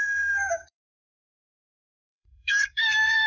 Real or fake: fake